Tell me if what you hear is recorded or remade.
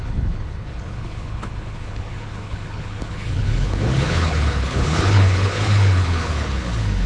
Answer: remade